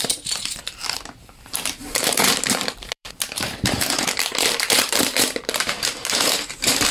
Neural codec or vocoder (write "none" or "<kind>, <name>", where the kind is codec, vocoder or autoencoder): vocoder, BigVGAN v2